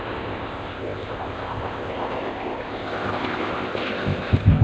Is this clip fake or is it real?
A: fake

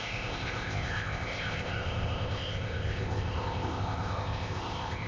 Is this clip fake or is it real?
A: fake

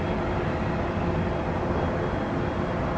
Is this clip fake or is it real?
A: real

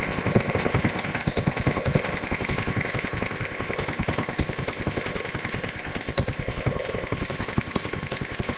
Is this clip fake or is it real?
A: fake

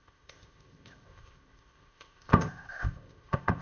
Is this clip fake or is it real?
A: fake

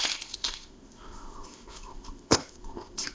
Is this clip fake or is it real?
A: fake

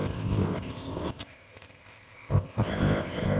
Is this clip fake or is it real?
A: fake